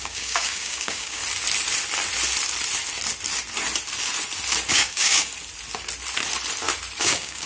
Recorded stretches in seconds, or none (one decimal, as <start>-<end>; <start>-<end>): 1.2-4.7; 5.3-7.0